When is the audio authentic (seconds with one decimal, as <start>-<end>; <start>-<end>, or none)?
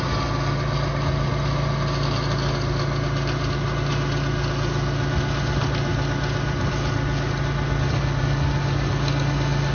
0.0-9.7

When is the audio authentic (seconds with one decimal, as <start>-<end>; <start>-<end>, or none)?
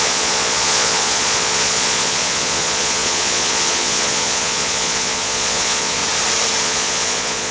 6.0-6.6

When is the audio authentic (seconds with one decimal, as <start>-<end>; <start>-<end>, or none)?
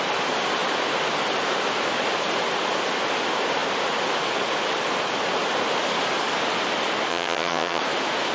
0.0-7.1; 7.8-8.3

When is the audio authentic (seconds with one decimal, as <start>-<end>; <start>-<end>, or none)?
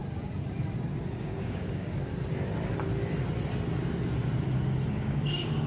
0.0-1.2; 2.1-4.9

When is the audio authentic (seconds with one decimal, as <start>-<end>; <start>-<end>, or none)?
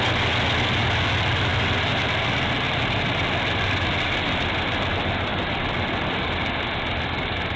0.0-1.5; 3.7-5.3; 6.2-7.6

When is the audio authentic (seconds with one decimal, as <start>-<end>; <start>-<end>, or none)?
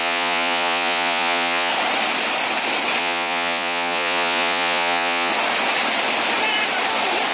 1.7-3.0; 5.3-7.3